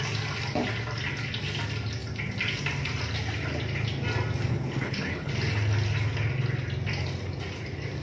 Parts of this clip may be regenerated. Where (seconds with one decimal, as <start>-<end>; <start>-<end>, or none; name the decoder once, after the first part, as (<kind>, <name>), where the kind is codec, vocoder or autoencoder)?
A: 4.5-5.3 (codec, HILCodec)

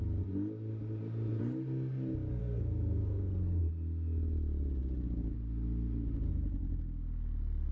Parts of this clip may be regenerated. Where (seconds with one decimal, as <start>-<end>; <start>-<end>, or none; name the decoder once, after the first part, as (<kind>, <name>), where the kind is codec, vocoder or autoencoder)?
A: 2.4-3.6 (codec, SNAC)

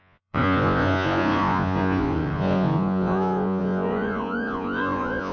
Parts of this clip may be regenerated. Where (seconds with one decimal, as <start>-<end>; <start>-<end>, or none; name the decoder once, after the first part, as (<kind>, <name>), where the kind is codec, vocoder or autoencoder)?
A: 0.0-5.3 (vocoder, Vocos)

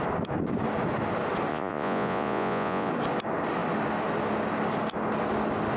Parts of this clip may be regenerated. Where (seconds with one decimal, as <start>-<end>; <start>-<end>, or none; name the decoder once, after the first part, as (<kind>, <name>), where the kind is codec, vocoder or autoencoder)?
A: 1.5-2.9 (vocoder, Vocos)

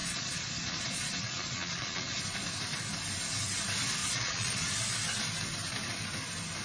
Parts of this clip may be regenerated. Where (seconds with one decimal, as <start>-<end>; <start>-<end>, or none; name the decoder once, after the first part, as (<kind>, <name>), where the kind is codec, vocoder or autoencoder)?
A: 0.0-2.2 (vocoder, Vocos); 4.0-4.7